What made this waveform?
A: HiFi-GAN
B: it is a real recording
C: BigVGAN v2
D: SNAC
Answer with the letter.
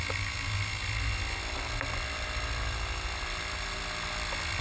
B